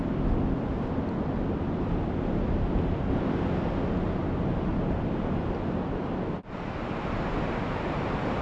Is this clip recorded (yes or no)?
yes